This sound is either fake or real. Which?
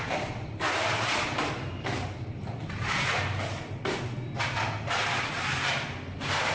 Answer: real